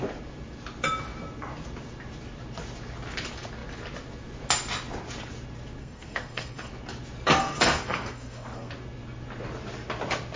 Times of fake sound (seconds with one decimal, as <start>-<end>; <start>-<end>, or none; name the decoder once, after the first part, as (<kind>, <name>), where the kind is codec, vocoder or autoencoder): 5.8-6.7 (codec, SNAC); 7.4-8.7